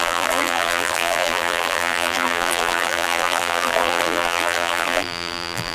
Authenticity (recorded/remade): remade